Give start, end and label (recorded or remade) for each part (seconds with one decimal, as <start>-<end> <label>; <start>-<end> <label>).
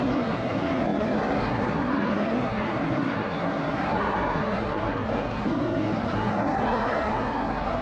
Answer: 0.0-7.8 remade